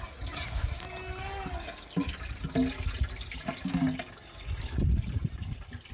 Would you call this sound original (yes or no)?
yes